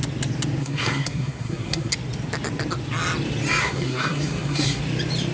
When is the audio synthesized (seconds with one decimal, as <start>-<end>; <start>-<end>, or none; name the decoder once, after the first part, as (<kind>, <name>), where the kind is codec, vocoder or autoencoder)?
0.6-1.9 (codec, SNAC); 3.6-4.8